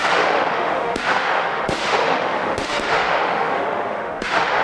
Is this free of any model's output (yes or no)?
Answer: no